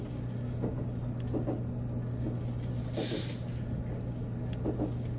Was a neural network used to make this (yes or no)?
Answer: no